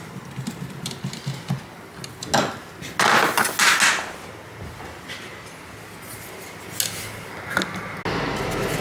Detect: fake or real real